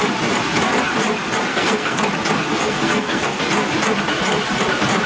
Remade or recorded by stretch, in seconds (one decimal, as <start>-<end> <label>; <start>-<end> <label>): 0.0-1.5 recorded; 1.5-2.0 remade; 2.0-2.5 recorded; 2.5-3.4 remade; 3.4-5.1 recorded

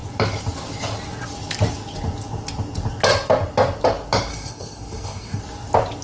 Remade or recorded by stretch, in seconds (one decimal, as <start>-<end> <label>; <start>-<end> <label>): 0.0-4.3 recorded; 4.3-5.4 remade; 5.4-6.0 recorded

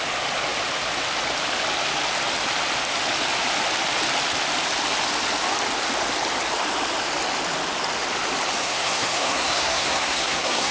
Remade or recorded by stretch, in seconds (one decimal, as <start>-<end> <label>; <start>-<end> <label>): 0.0-8.6 recorded; 8.6-10.7 remade

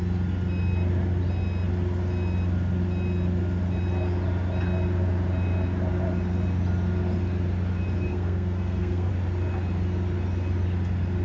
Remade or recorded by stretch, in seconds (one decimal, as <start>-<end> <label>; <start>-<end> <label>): 0.0-8.1 recorded; 8.1-9.1 remade; 9.1-11.2 recorded